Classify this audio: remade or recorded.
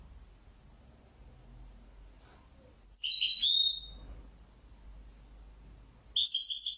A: recorded